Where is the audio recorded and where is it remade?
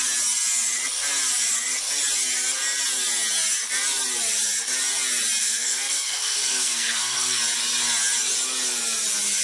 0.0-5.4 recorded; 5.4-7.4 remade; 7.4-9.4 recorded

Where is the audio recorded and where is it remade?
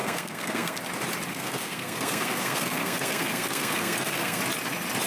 0.0-0.8 remade; 0.8-1.3 recorded; 1.3-4.4 remade; 4.4-5.1 recorded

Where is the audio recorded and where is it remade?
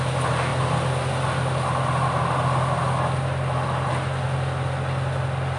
0.0-5.6 recorded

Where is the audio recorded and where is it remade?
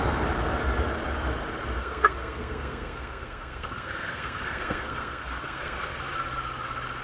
0.0-1.8 recorded; 1.8-6.0 remade; 6.0-7.0 recorded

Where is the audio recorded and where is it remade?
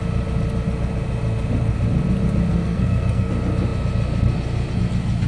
0.0-2.5 recorded; 2.5-3.3 remade; 3.3-5.3 recorded